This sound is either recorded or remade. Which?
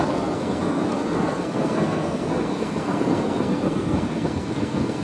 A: remade